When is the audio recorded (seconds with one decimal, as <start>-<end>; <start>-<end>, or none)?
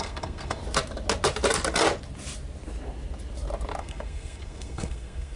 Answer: 0.6-3.8